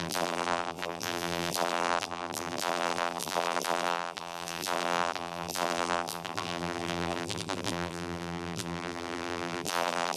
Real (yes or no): no